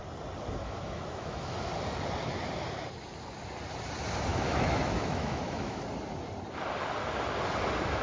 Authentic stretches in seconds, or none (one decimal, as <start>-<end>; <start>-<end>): 0.0-0.6; 1.7-4.3; 5.8-8.0